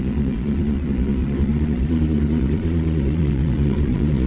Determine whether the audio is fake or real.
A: fake